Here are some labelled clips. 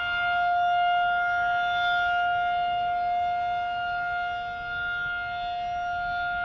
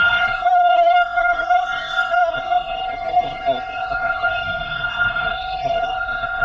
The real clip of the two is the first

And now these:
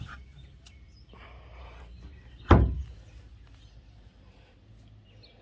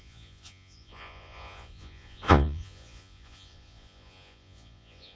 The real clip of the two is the first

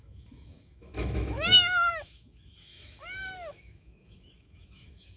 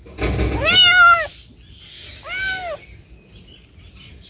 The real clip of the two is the second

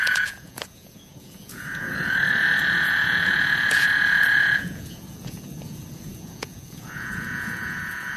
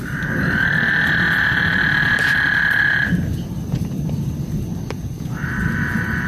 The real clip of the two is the second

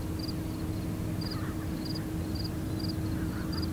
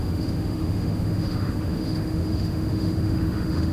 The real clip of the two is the first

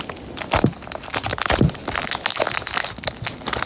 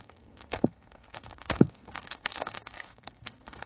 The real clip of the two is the first